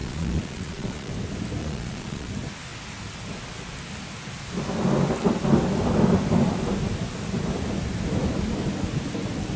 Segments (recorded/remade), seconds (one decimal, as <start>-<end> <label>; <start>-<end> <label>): 0.0-1.1 remade; 1.1-1.6 recorded; 1.6-2.3 remade; 2.3-9.6 recorded